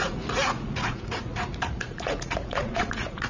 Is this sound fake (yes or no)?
yes